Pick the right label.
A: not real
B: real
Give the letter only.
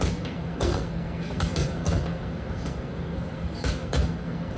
A